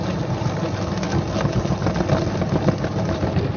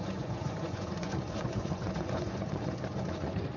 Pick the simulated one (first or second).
second